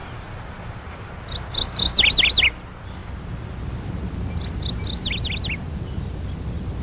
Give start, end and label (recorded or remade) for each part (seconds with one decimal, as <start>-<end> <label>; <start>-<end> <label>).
0.0-1.1 remade; 1.1-6.8 recorded